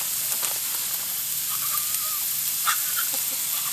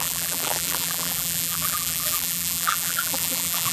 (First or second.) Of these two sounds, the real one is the first